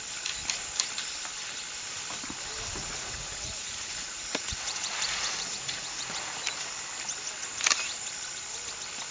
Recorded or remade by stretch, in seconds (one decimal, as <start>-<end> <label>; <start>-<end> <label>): 0.0-2.8 recorded; 2.8-6.2 remade; 6.2-9.1 recorded